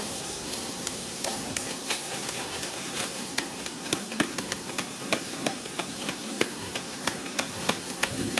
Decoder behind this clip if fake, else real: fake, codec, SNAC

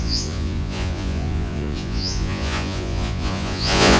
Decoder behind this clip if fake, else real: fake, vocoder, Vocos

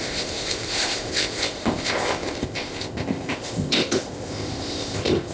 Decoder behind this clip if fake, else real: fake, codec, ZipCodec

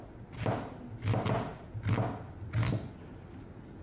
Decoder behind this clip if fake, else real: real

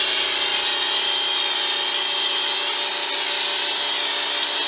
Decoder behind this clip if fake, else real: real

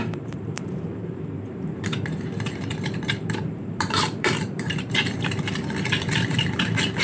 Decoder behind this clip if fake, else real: fake, vocoder, BigVGAN v2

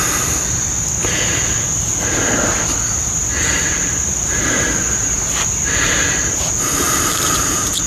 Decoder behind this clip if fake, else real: real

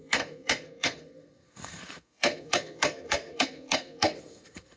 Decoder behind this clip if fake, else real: fake, codec, SNAC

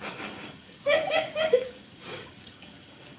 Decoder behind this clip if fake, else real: fake, codec, DAC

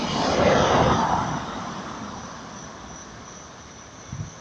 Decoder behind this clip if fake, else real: fake, vocoder, BigVGAN v2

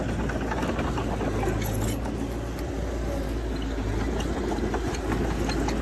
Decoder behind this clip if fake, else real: real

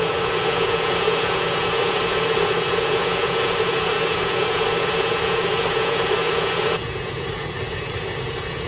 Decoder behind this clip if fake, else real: fake, vocoder, Vocos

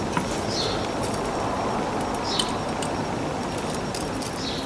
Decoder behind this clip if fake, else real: real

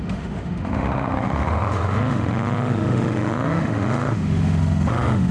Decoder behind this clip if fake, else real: fake, autoencoder, DAC-VAE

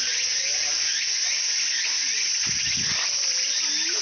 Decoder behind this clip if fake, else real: real